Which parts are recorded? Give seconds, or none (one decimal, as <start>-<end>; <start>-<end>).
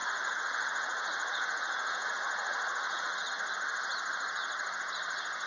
3.3-5.5